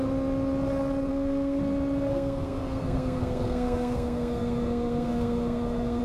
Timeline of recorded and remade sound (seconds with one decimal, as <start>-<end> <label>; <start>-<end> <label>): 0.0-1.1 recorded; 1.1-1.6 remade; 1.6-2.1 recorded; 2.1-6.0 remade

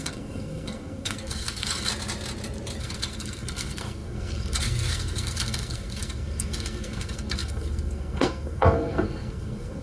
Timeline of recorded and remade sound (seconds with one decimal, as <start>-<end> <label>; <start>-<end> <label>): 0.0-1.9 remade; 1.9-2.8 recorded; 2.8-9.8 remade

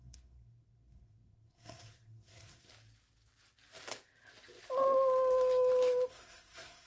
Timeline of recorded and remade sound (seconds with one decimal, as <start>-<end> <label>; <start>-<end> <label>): 0.0-2.7 remade; 2.7-6.1 recorded; 6.1-6.9 remade

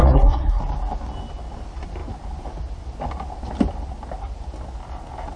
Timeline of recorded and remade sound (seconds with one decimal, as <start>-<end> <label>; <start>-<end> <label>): 0.0-0.6 remade; 0.6-5.4 recorded